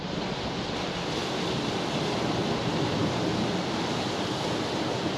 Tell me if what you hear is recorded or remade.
recorded